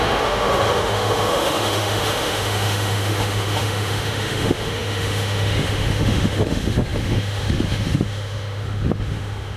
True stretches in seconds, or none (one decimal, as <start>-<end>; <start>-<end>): none